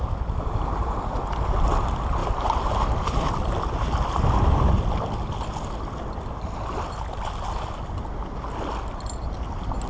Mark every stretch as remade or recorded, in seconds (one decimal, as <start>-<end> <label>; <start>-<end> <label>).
0.0-9.9 recorded